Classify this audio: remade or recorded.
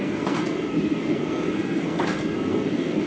remade